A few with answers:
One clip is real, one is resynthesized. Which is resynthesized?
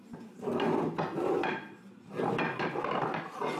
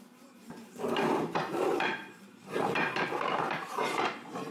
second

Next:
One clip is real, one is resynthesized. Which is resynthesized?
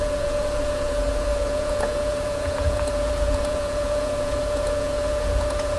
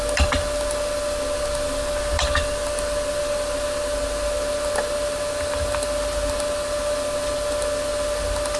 first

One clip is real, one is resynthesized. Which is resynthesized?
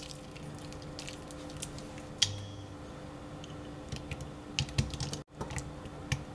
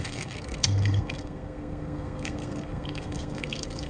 second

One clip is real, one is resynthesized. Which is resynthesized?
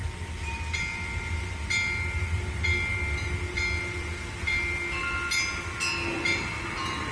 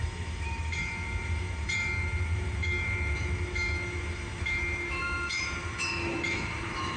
second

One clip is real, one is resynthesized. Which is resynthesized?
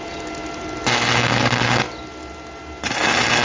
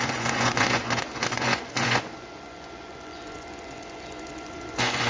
second